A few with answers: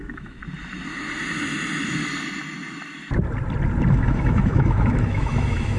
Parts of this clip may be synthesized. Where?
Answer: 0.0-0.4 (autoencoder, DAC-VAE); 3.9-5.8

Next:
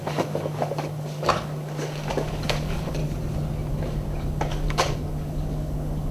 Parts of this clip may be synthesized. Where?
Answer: 0.0-3.0 (codec, DAC); 3.7-6.1